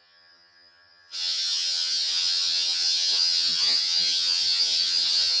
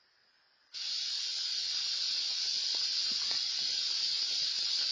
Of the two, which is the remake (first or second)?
first